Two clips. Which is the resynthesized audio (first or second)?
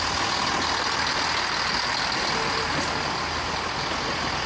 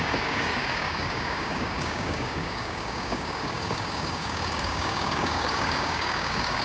second